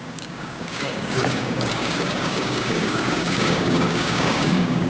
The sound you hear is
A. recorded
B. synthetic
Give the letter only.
B